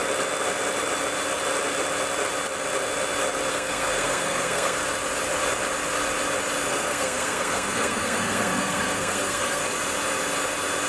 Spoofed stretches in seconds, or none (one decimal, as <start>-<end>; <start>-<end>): 3.5-4.8; 6.7-9.6